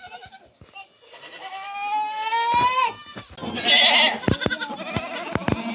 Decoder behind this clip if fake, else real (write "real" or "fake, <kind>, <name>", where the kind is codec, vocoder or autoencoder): real